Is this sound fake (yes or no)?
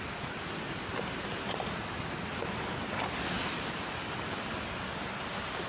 no